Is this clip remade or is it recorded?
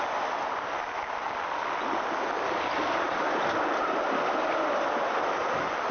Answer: recorded